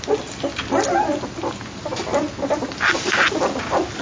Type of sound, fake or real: real